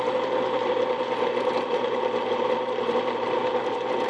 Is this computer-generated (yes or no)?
yes